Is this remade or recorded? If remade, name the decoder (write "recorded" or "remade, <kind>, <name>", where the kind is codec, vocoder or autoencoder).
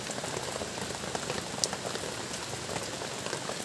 recorded